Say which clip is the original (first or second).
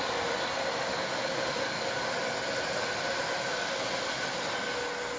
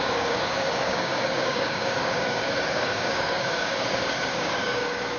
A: first